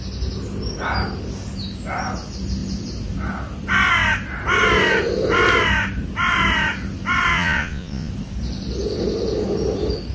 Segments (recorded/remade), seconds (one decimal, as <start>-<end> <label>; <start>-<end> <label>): 0.0-7.3 recorded; 7.3-8.1 remade; 8.1-10.1 recorded